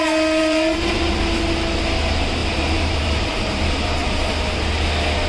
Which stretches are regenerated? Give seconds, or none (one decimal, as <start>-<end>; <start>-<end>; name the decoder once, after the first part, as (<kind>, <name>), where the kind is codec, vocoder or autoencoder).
0.4-1.0 (vocoder, BigVGAN v2); 2.4-4.3